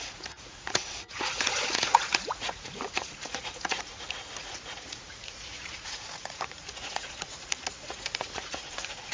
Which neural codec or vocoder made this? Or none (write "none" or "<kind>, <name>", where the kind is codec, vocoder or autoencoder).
vocoder, Vocos